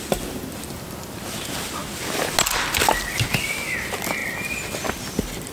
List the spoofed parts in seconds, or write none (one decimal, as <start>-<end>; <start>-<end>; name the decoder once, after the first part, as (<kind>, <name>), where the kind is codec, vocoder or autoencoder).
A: none